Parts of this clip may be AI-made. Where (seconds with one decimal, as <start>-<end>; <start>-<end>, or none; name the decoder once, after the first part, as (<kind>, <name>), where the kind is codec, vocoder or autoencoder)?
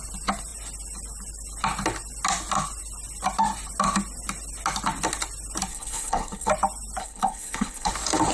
5.7-6.5 (codec, HILCodec); 7.0-7.9